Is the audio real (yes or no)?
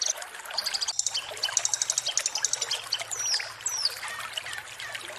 yes